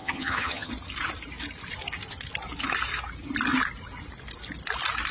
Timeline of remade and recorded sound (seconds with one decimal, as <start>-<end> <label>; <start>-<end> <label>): 0.0-0.7 remade; 0.7-5.1 recorded